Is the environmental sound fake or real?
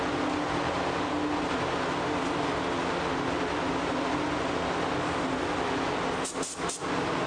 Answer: real